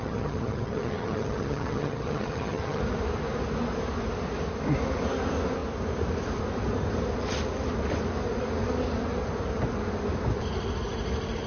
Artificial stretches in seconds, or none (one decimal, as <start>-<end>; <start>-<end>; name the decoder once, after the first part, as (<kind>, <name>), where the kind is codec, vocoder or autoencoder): 0.0-2.8 (vocoder, HiFi-GAN)